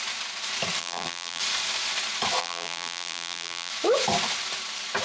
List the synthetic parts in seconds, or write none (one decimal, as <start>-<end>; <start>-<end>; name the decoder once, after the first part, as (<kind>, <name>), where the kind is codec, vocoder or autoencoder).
0.8-1.4 (vocoder, BigVGAN v2); 2.4-3.7